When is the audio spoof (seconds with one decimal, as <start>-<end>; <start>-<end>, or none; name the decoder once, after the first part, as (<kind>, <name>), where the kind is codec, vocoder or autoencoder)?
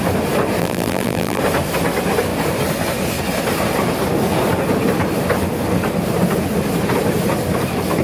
0.6-1.4 (vocoder, BigVGAN v2)